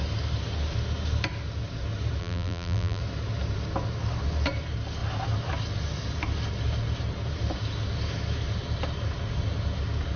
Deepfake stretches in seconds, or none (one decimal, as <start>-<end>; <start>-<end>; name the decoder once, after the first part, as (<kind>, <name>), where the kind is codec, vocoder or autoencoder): 2.2-3.0 (vocoder, BigVGAN v2)